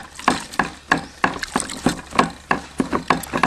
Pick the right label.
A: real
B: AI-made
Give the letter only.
A